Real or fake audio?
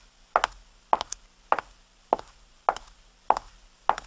real